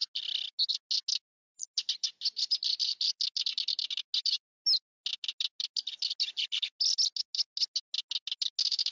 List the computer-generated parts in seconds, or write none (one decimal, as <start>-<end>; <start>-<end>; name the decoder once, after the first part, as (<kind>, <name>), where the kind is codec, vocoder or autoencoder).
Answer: none